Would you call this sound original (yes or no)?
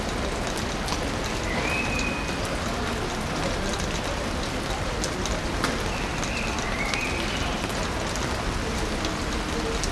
yes